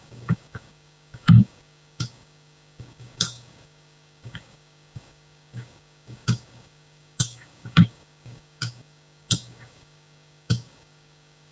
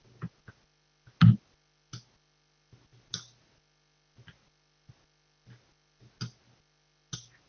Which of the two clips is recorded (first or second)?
second